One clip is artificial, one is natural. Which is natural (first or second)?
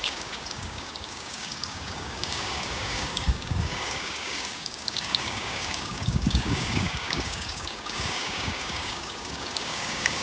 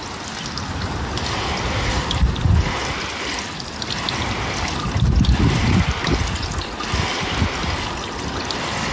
second